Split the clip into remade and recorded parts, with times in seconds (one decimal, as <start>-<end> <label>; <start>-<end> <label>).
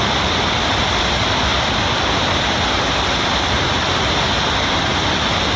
0.0-5.6 recorded